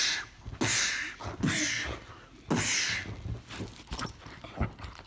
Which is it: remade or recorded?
recorded